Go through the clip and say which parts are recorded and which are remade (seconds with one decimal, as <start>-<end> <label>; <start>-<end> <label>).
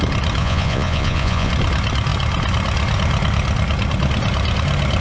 0.0-0.4 recorded; 0.4-1.5 remade; 1.5-5.0 recorded